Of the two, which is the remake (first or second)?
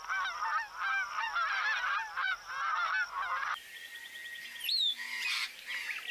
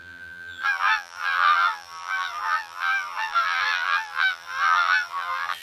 second